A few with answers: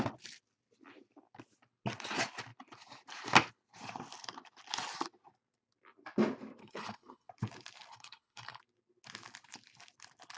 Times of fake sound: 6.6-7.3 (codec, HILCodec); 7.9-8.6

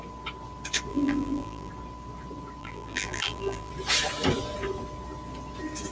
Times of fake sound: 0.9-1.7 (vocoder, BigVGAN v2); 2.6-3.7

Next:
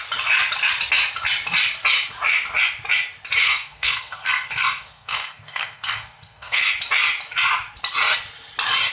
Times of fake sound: 3.4-6.7 (codec, SNAC)

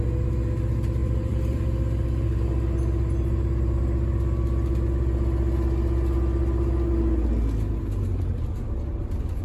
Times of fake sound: 1.0-1.6 (vocoder, BigVGAN v2)

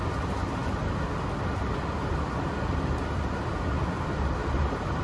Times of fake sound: 4.4-5.0 (vocoder, BigVGAN v2)

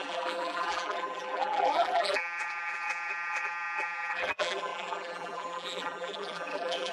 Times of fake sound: 0.0-6.9 (vocoder, BigVGAN v2)